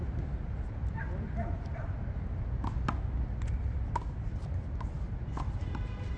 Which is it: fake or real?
real